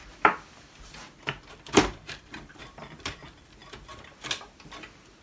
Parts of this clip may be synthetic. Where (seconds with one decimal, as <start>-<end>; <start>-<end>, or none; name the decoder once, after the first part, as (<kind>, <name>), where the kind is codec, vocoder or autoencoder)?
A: 0.0-3.6 (vocoder, BigVGAN v2)